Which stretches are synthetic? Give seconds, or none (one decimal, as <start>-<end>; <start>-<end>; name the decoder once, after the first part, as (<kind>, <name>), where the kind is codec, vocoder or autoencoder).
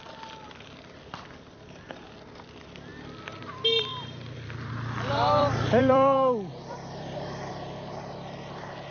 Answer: 2.9-3.4 (vocoder, BigVGAN v2); 3.9-7.5